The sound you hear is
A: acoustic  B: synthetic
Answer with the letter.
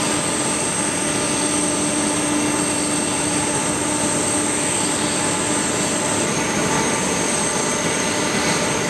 A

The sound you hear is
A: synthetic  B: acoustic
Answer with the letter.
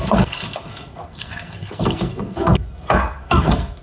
A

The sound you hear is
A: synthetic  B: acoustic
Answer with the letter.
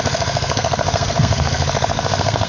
A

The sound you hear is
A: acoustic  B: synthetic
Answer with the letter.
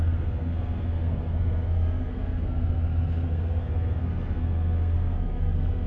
B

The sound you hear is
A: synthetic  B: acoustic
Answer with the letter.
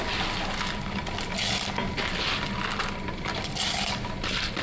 B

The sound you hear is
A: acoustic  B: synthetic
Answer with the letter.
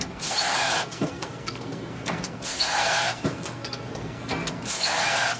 B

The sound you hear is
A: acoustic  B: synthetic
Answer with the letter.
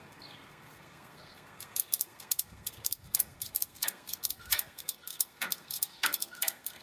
B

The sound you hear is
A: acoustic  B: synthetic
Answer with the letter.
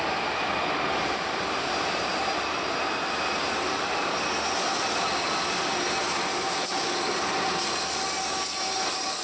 A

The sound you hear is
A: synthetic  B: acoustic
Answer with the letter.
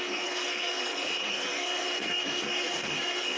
A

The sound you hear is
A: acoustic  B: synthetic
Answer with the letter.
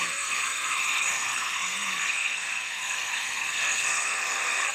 B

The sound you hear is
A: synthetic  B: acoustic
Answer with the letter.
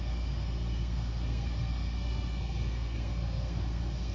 A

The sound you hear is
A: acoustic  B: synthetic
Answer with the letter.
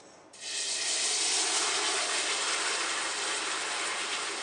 A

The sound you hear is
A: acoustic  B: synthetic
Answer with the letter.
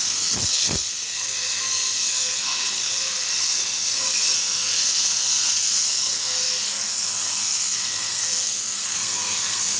B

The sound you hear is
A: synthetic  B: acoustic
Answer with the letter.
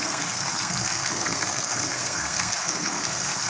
A